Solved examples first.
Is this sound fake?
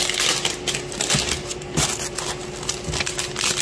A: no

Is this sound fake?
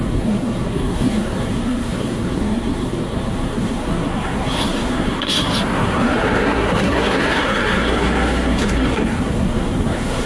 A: yes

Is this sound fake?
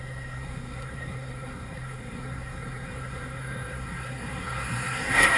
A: yes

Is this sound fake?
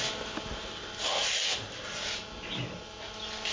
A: no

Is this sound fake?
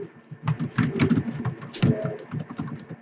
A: no